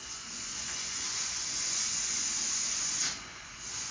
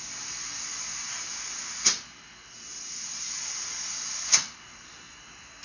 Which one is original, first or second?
second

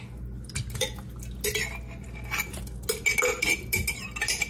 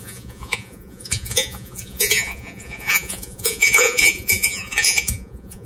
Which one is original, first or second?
first